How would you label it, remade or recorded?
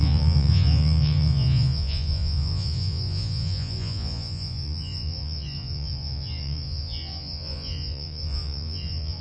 remade